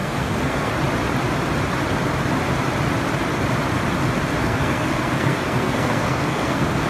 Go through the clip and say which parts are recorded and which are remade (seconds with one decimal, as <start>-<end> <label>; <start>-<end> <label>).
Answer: 0.0-0.7 remade; 0.7-4.4 recorded; 4.4-6.9 remade

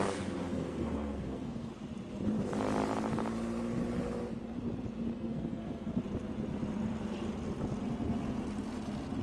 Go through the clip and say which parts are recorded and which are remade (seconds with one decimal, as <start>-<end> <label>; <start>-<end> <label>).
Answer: 0.0-0.4 recorded; 0.4-1.7 remade; 1.7-5.1 recorded; 5.1-6.0 remade; 6.0-9.2 recorded

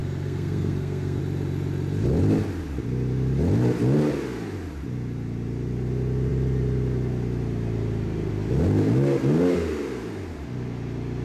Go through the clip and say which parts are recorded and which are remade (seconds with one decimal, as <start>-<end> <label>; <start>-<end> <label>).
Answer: 0.0-1.2 remade; 1.2-11.2 recorded